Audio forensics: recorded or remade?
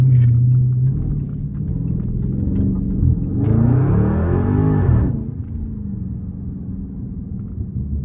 recorded